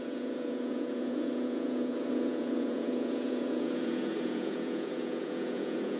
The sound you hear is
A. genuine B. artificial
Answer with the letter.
B